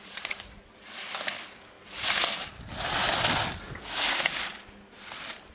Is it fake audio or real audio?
real